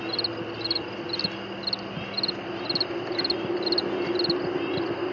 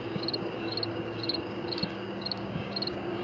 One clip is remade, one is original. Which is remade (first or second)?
second